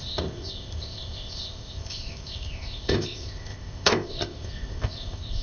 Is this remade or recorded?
remade